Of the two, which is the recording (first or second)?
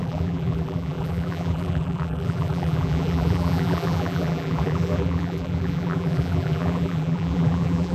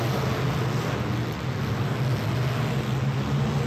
second